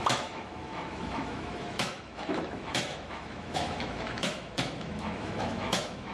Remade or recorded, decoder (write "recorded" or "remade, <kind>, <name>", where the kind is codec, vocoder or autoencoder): remade, autoencoder, DAC-VAE